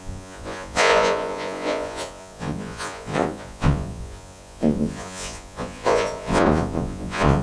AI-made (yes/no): yes